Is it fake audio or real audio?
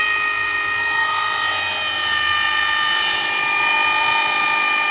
real